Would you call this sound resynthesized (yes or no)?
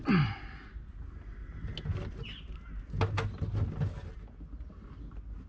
no